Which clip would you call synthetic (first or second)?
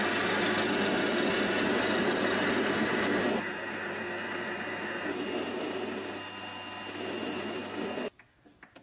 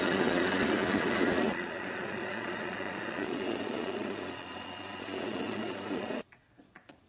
second